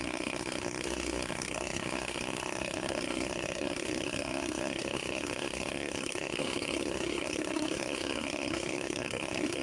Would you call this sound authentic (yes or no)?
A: no